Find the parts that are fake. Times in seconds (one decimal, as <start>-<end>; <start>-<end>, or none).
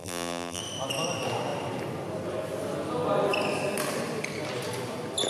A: 0.0-0.6